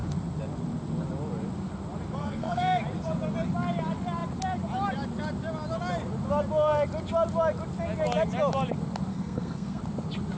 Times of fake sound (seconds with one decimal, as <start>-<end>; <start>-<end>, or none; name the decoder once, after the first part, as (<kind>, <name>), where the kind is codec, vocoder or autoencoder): 2.2-2.8 (codec, SNAC); 9.1-9.8